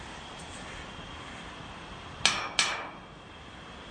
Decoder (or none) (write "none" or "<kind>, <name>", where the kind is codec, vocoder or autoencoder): none